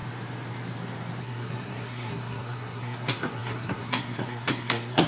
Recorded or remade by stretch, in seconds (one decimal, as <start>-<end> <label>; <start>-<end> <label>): 0.0-1.2 recorded; 1.2-5.1 remade